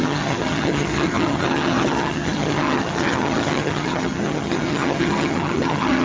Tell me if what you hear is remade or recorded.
remade